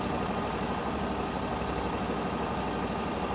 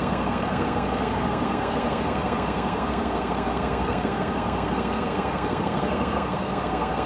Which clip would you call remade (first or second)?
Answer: second